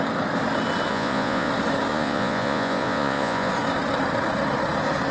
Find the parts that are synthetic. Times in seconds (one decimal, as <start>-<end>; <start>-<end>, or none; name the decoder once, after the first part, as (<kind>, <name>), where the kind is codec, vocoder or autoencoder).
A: 0.9-1.5 (vocoder, Vocos); 1.9-3.5